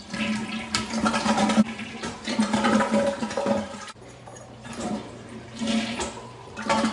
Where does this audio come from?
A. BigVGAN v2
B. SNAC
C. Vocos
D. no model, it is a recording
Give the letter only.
A